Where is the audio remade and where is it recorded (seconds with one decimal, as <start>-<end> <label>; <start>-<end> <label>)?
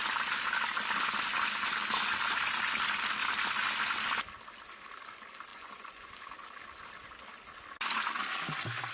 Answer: 0.0-5.5 recorded; 5.5-6.1 remade; 6.1-8.9 recorded